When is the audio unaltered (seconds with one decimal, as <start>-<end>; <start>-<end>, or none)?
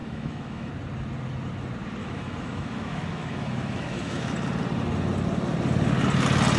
0.7-2.0; 4.3-6.6